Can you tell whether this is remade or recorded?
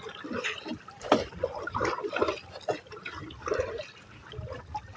recorded